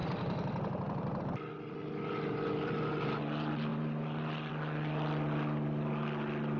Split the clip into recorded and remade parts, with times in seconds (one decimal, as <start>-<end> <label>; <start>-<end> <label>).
0.0-1.2 remade; 1.2-3.7 recorded; 3.7-4.5 remade; 4.5-6.6 recorded